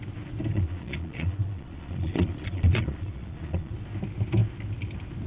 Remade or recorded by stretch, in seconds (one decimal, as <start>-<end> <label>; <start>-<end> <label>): 0.0-0.5 recorded; 0.5-3.7 remade; 3.7-5.3 recorded